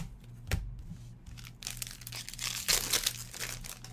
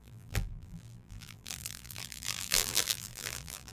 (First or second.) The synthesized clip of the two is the second